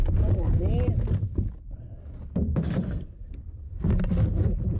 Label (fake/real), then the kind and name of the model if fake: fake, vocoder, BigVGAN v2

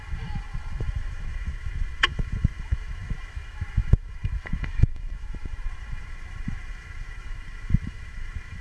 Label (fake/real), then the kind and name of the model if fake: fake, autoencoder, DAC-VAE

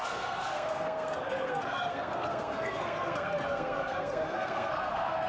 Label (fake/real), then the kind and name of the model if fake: fake, codec, SNAC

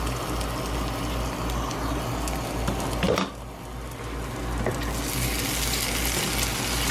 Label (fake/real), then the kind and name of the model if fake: real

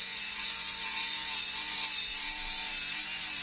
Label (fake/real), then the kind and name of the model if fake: fake, vocoder, Vocos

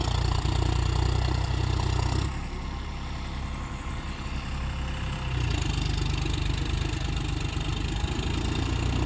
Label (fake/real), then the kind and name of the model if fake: real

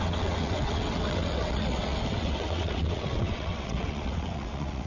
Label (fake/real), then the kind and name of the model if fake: fake, vocoder, WaveNeXt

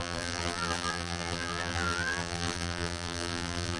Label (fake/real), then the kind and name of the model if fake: fake, vocoder, BigVGAN v2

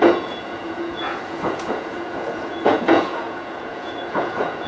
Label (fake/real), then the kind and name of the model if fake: fake, vocoder, Vocos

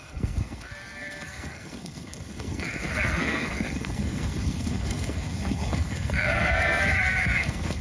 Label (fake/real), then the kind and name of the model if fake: fake, codec, SNAC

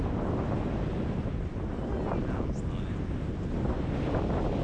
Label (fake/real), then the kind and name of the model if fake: real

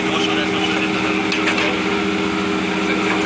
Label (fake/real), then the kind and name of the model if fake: real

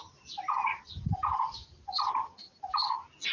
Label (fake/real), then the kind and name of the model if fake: real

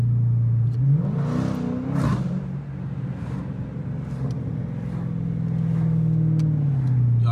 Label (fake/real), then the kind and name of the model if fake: real